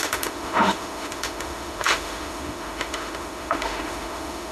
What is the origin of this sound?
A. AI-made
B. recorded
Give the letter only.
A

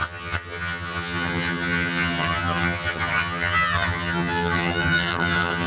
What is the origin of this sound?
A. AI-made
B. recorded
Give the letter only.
A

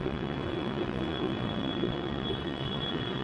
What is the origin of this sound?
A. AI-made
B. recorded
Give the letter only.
A